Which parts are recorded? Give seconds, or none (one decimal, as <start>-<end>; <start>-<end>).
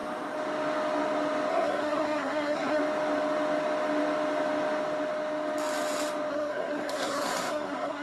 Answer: 0.0-1.5; 2.8-6.3